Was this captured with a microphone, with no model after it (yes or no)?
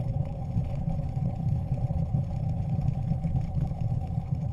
no